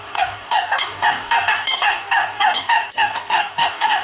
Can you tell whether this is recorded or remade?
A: remade